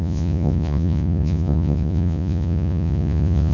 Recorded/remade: remade